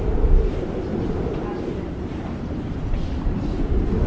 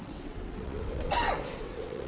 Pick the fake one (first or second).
second